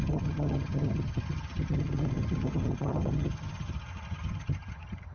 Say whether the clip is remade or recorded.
remade